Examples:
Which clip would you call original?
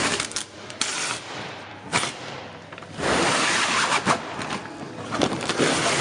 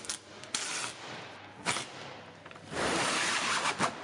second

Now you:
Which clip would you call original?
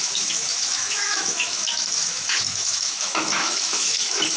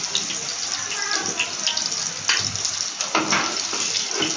second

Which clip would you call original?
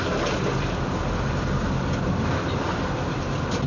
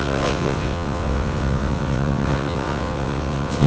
first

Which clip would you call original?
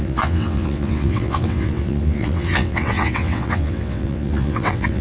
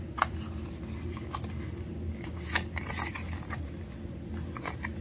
second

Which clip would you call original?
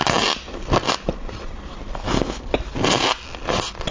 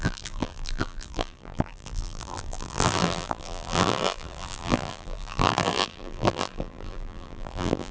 first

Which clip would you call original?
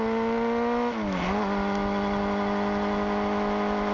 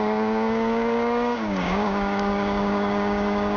first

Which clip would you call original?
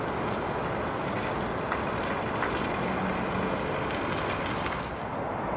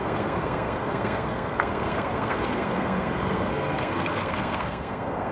first